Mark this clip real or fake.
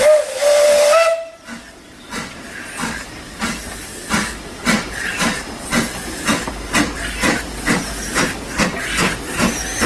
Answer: real